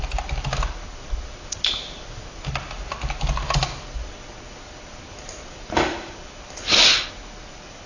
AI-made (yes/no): no